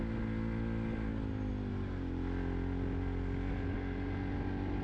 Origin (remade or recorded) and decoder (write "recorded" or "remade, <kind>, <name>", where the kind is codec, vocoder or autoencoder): recorded